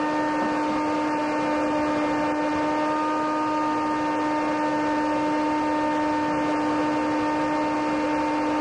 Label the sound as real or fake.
real